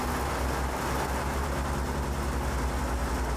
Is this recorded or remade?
recorded